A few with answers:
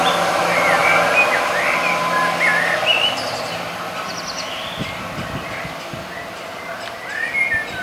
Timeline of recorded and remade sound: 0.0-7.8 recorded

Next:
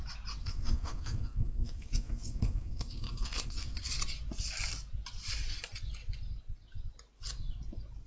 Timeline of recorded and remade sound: 0.0-0.4 recorded; 0.4-3.9 remade; 3.9-8.1 recorded

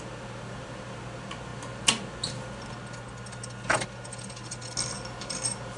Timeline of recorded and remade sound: 0.0-5.8 recorded

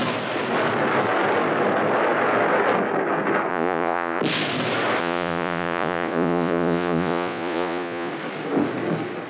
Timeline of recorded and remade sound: 0.0-3.5 recorded; 3.5-4.2 remade; 4.2-5.0 recorded; 5.0-8.1 remade; 8.1-9.3 recorded

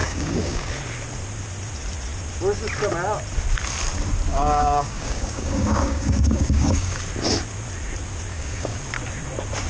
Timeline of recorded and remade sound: 0.0-0.7 remade; 0.7-4.3 recorded; 4.3-7.0 remade; 7.0-8.3 recorded; 8.3-8.8 remade; 8.8-9.7 recorded

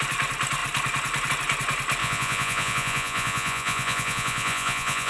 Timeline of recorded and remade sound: 0.0-2.0 recorded; 2.0-5.1 remade

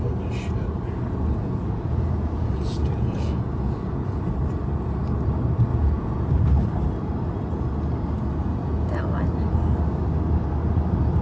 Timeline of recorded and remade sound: 0.0-1.3 recorded; 1.3-4.2 remade; 4.2-5.7 recorded; 5.7-6.3 remade; 6.3-8.4 recorded; 8.4-9.0 remade; 9.0-11.2 recorded